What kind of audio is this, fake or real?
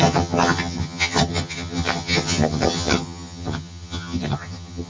fake